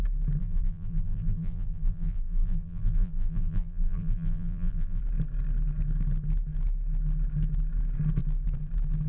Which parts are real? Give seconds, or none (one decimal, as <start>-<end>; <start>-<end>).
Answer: 0.0-0.4; 5.0-9.1